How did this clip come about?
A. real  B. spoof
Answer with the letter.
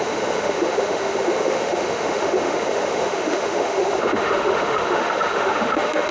B